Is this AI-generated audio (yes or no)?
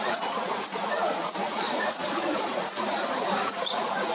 yes